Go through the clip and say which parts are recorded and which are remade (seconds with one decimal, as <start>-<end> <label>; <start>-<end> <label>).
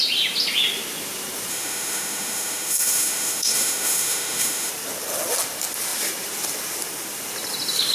0.0-1.5 recorded; 1.5-4.7 remade; 4.7-7.9 recorded